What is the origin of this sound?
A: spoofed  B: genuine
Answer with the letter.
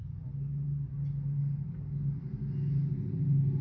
B